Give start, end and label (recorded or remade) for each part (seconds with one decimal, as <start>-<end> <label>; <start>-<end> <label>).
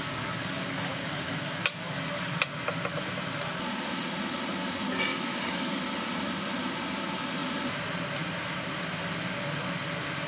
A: 0.0-2.4 remade; 2.4-5.1 recorded; 5.1-5.8 remade; 5.8-10.3 recorded